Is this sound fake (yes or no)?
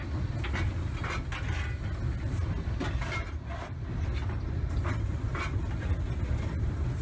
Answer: no